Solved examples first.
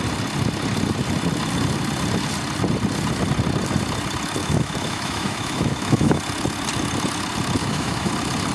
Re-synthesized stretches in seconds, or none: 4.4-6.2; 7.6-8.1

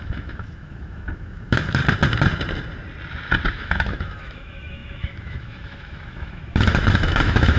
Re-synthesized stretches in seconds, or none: 0.0-1.8; 3.5-7.6